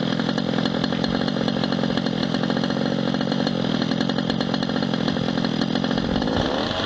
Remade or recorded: recorded